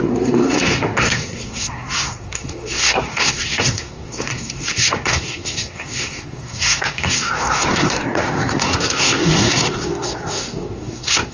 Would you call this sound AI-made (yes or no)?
yes